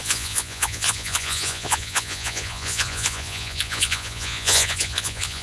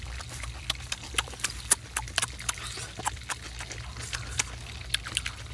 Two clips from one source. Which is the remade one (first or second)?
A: first